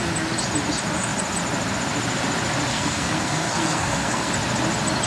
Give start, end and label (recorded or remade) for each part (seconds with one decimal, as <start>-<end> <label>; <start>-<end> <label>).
0.0-2.7 recorded; 2.7-4.3 remade; 4.3-5.1 recorded